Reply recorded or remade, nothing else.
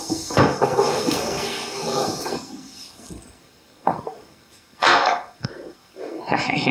remade